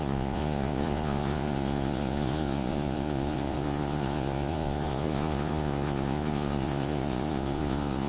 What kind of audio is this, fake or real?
fake